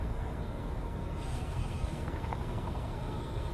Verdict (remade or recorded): remade